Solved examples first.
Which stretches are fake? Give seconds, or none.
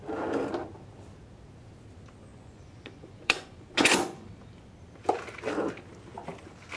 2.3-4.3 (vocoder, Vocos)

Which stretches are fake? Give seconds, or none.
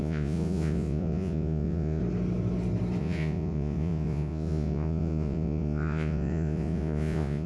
0.0-2.0 (vocoder, Vocos); 3.0-7.5